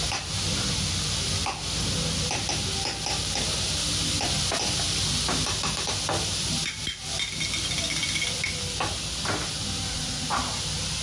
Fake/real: real